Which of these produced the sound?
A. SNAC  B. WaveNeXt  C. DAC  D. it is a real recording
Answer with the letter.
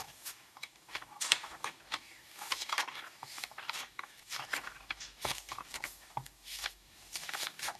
C